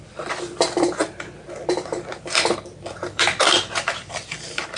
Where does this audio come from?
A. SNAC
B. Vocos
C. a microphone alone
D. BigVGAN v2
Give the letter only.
D